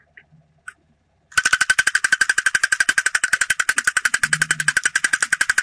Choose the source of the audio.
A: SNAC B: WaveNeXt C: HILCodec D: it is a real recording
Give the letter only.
D